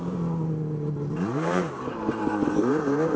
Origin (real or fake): fake